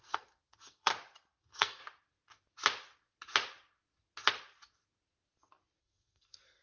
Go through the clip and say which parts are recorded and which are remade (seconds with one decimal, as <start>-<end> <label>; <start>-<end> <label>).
0.0-0.9 remade; 0.9-1.4 recorded; 1.4-1.8 remade; 1.8-5.8 recorded; 5.8-6.6 remade